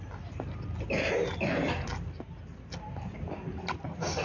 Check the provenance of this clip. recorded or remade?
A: recorded